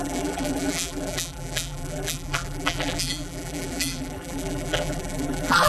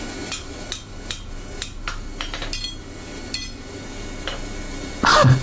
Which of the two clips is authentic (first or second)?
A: second